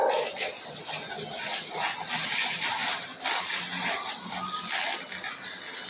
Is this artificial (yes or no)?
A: no